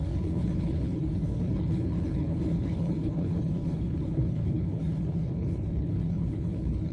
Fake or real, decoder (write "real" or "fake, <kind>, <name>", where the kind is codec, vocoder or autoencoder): fake, codec, HILCodec